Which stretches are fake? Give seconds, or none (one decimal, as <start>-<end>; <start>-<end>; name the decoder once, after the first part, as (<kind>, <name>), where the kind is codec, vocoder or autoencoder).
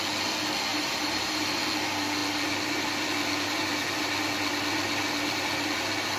0.7-1.6 (vocoder, BigVGAN v2)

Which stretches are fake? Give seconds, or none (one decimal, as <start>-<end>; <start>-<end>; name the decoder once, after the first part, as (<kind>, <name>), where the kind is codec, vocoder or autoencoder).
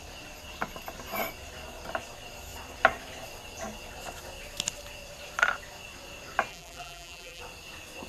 6.5-7.4 (vocoder, BigVGAN v2)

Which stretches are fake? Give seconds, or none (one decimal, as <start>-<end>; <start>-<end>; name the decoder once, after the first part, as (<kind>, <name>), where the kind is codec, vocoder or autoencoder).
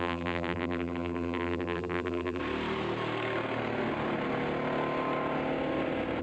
0.0-2.4 (vocoder, BigVGAN v2)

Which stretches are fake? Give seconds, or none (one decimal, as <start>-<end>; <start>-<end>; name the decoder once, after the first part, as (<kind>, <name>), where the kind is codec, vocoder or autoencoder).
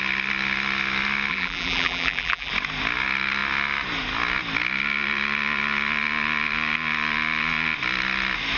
1.3-2.5 (vocoder, BigVGAN v2)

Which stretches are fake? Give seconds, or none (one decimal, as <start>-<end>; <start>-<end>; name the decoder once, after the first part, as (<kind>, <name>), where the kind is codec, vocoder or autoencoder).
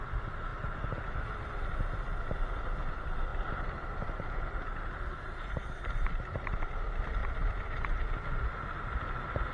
0.5-1.6 (vocoder, BigVGAN v2); 3.3-6.8; 7.2-8.0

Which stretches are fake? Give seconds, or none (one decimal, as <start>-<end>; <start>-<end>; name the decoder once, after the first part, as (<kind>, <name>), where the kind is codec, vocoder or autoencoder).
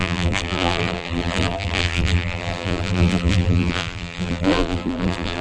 0.0-5.4 (vocoder, BigVGAN v2)